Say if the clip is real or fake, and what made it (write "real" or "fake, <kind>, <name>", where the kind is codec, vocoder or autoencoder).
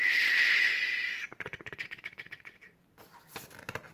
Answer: real